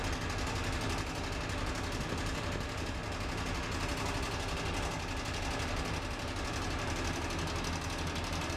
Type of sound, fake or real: real